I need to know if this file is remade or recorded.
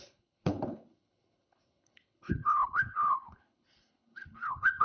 remade